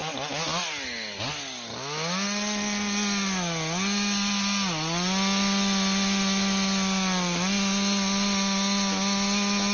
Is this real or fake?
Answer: real